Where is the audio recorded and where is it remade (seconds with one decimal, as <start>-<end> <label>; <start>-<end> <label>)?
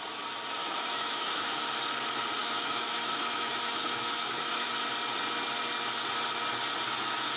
0.0-0.6 recorded; 0.6-1.7 remade; 1.7-2.4 recorded; 2.4-4.7 remade; 4.7-7.4 recorded